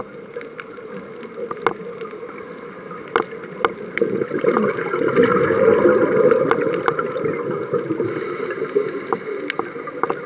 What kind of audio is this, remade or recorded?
recorded